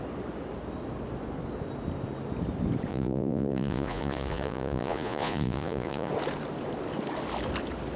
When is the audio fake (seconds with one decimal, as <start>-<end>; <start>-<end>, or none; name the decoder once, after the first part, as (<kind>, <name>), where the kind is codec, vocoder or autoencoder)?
2.9-6.1 (vocoder, Vocos)